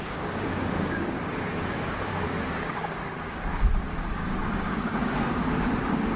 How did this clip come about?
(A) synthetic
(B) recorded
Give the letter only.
A